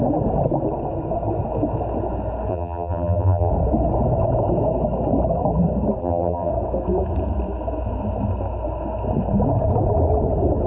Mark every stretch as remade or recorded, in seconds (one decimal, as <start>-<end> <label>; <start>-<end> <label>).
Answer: 0.0-2.5 recorded; 2.5-3.5 remade; 3.5-6.0 recorded; 6.0-6.5 remade; 6.5-10.7 recorded